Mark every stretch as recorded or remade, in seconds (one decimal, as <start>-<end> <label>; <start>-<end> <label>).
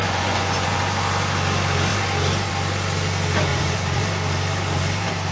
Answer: 0.0-0.8 remade; 0.8-3.5 recorded; 3.5-4.0 remade; 4.0-5.3 recorded